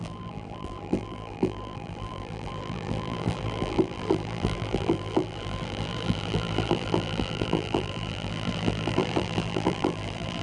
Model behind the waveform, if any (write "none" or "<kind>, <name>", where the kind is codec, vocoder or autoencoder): vocoder, BigVGAN v2